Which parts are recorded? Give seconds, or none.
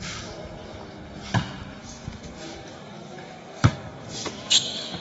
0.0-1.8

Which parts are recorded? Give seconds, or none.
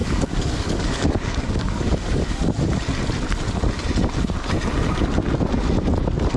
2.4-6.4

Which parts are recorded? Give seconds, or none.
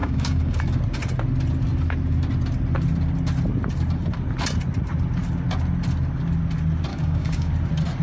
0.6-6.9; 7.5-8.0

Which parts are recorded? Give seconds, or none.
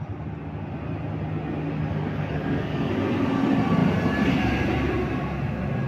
0.0-1.9; 2.9-5.9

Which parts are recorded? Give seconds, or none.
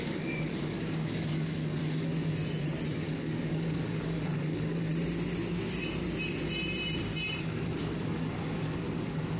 2.1-2.9; 4.9-7.4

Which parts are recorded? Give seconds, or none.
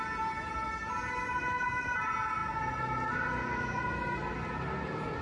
0.0-5.2